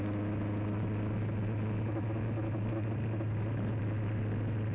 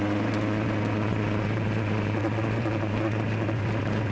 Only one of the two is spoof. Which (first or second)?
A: second